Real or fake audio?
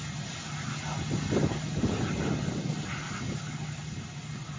real